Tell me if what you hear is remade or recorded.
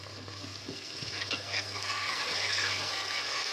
remade